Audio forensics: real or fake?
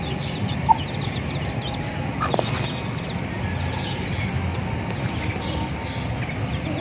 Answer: real